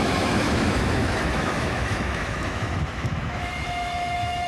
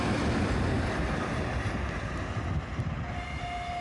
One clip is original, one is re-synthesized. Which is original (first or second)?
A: second